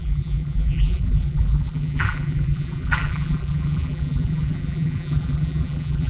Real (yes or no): no